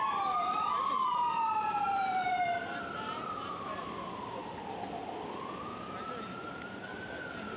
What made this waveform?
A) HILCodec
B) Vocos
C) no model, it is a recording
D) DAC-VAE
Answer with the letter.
C